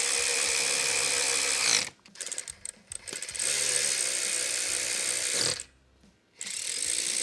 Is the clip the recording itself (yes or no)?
no